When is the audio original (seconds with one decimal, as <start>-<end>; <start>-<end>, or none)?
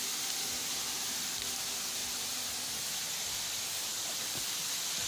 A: 0.0-5.1